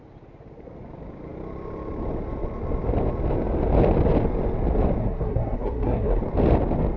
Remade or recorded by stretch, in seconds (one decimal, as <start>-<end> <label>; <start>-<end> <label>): 0.0-5.0 recorded; 5.0-6.2 remade; 6.2-7.0 recorded